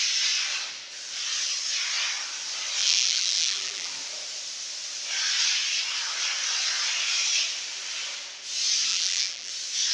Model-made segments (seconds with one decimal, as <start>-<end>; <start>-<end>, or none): 2.8-3.9; 8.9-9.5